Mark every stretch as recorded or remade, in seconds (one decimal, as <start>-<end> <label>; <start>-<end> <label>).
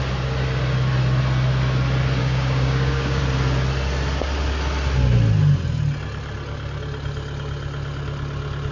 0.0-2.2 recorded; 2.2-3.2 remade; 3.2-8.7 recorded